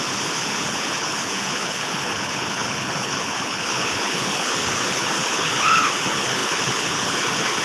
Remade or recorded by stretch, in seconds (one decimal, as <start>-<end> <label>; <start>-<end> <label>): 0.0-7.6 remade